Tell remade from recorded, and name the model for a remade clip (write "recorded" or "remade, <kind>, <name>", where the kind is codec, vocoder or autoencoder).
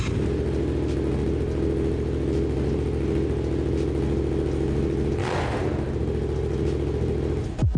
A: recorded